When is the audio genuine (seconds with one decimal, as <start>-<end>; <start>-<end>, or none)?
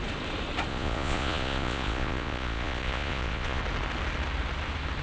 0.0-0.7; 3.6-5.0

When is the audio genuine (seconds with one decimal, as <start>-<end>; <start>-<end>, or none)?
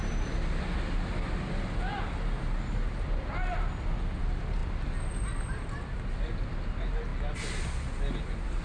0.0-8.6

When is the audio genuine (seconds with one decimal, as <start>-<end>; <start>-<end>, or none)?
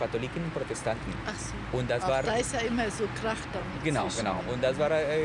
0.0-3.6; 4.4-5.2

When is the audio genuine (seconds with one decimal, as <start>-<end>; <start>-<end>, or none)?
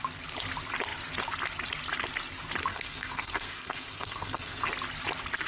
0.0-2.7; 4.7-5.5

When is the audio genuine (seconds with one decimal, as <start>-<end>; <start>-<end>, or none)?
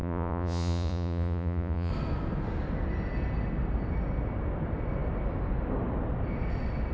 1.9-6.9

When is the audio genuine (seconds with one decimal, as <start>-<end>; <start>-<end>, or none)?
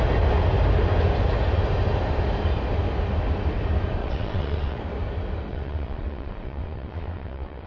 0.0-4.0; 4.8-5.5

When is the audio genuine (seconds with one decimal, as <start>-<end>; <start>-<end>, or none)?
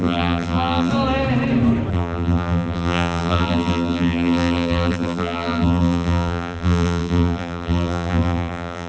0.9-1.9